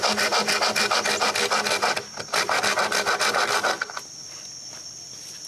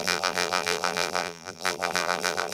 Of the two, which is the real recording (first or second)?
first